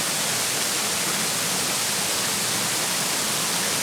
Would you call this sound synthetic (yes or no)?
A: no